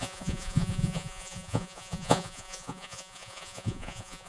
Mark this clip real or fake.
fake